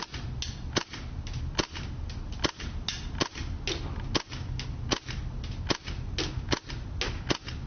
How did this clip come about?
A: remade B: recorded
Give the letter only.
B